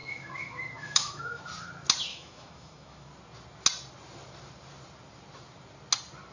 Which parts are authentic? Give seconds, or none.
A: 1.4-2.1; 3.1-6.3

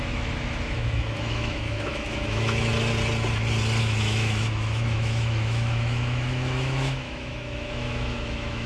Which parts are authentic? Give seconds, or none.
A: 2.7-3.8